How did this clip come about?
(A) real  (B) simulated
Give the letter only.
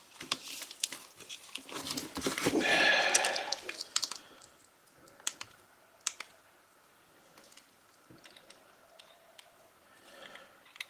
B